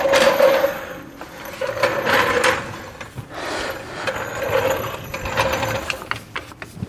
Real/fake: real